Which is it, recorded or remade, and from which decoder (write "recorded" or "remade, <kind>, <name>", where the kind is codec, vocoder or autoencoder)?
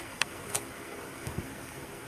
remade, codec, SNAC